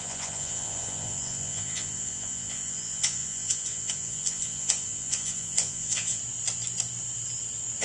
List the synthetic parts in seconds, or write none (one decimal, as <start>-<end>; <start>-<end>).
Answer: 0.0-6.2